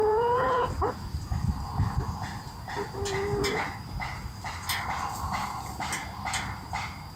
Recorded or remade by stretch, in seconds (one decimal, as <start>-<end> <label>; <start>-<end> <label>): 0.0-0.6 remade; 0.6-7.2 recorded